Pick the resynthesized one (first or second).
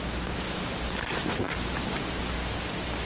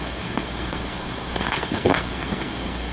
second